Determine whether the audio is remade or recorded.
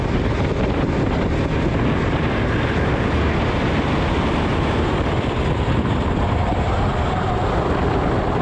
recorded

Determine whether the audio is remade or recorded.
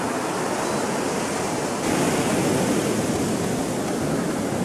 recorded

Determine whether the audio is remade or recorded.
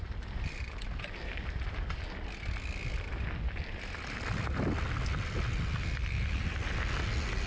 recorded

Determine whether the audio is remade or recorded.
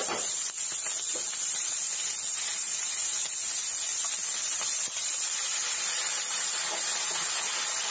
recorded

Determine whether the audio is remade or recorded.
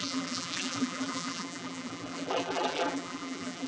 remade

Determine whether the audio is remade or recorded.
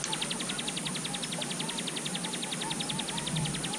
recorded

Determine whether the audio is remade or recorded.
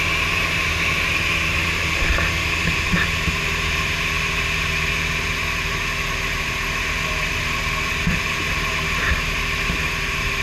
remade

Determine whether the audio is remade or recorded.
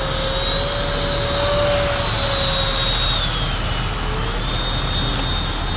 recorded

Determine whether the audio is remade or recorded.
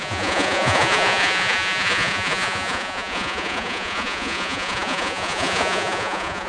remade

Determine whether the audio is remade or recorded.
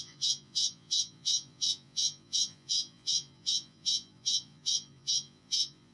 remade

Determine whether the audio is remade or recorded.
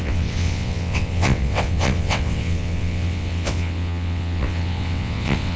remade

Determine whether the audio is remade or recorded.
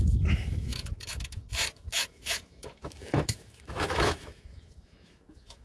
remade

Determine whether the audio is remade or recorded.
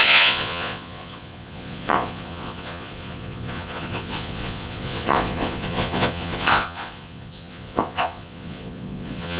remade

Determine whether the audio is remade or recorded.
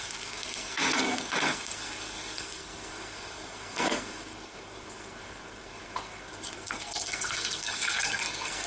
remade